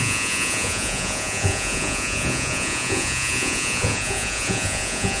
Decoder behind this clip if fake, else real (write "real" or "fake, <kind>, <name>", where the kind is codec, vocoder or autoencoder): fake, vocoder, Vocos